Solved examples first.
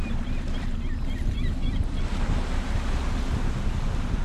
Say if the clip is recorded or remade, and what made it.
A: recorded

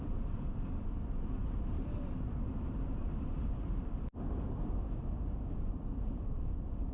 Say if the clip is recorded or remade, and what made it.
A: remade, vocoder, BigVGAN v2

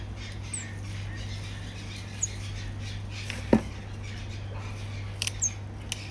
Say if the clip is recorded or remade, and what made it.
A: recorded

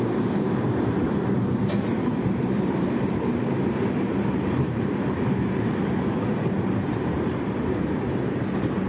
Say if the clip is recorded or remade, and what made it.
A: remade, vocoder, BigVGAN v2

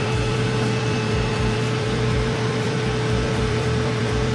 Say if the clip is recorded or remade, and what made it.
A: remade, vocoder, BigVGAN v2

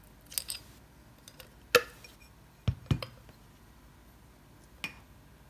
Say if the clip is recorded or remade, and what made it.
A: recorded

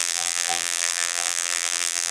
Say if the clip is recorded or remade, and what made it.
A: remade, vocoder, BigVGAN v2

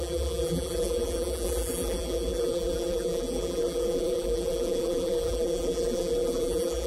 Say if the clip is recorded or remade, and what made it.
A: remade, vocoder, BigVGAN v2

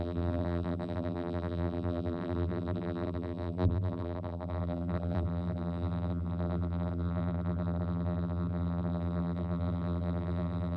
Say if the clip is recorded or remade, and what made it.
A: remade, vocoder, BigVGAN v2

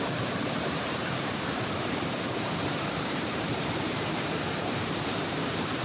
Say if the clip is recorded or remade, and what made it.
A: remade, vocoder, BigVGAN v2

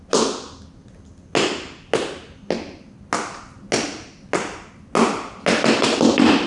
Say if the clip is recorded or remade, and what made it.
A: recorded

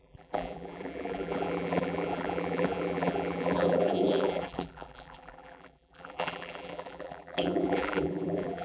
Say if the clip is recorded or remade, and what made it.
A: remade, vocoder, BigVGAN v2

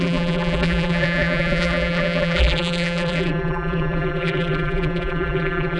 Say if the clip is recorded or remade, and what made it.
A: remade, vocoder, BigVGAN v2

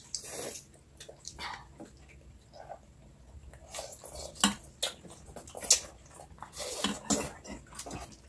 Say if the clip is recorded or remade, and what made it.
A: recorded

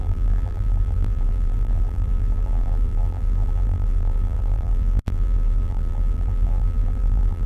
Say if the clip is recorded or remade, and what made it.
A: remade, vocoder, BigVGAN v2